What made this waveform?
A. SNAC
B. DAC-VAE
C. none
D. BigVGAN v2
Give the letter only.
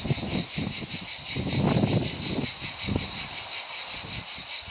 C